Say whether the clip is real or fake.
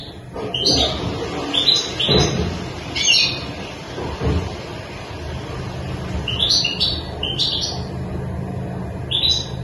real